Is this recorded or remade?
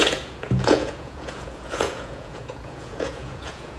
remade